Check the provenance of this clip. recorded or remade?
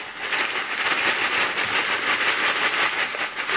recorded